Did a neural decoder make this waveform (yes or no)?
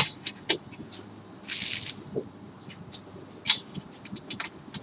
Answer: no